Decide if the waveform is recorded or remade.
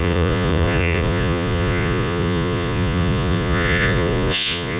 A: remade